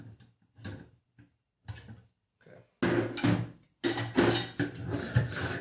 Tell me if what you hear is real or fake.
real